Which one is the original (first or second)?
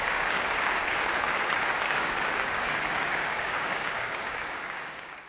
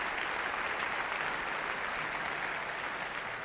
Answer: second